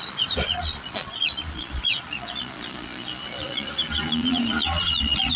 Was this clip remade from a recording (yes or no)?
yes